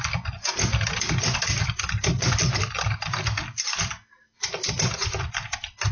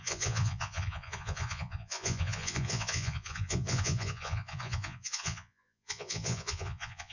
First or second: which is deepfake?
second